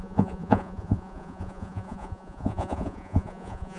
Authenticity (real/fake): fake